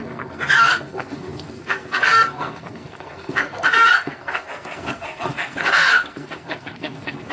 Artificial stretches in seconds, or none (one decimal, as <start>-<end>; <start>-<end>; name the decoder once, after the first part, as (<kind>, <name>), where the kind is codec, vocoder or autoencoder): 0.0-7.3 (codec, SNAC)